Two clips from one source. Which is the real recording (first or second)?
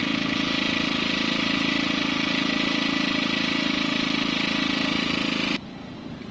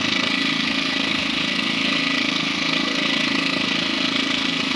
first